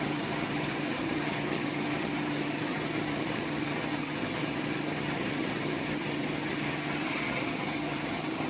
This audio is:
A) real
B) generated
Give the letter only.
B